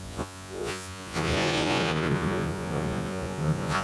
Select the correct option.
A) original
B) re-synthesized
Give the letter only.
B